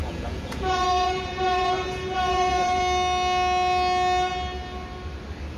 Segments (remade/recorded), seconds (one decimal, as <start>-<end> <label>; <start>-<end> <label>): 0.0-2.8 remade; 2.8-5.6 recorded